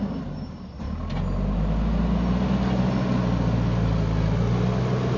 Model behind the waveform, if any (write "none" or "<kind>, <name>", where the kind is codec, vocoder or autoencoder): none